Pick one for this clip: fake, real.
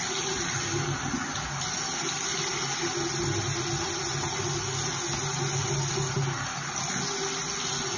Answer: real